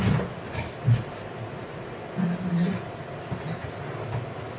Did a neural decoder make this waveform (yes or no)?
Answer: no